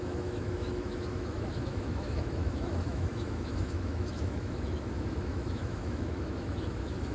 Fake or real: fake